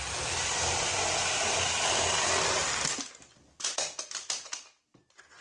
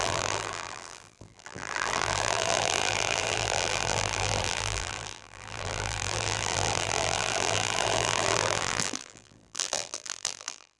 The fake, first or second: second